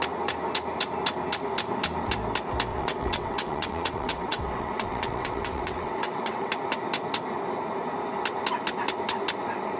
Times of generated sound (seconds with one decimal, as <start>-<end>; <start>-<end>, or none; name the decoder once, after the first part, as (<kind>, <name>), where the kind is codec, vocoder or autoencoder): 2.7-6.5 (vocoder, WaveNeXt)